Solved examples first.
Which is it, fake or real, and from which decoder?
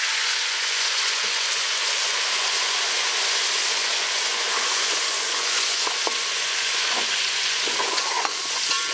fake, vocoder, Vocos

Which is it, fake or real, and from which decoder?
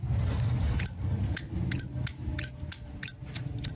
real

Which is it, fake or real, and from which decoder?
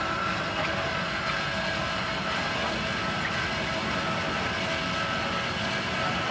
real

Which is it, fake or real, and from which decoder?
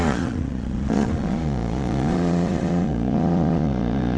fake, vocoder, Vocos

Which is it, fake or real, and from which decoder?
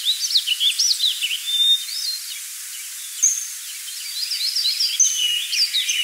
real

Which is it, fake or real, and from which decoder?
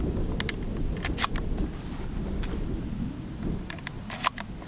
real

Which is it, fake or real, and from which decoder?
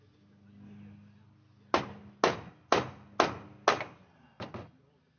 real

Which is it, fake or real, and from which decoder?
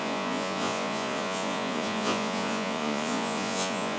fake, vocoder, Vocos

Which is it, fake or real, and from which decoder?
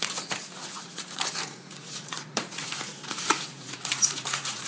fake, vocoder, Vocos